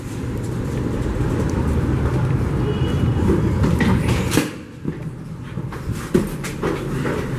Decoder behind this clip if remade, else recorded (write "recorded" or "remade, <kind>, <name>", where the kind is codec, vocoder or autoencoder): remade, vocoder, BigVGAN v2